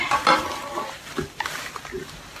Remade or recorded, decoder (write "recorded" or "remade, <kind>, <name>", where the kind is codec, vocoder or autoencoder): recorded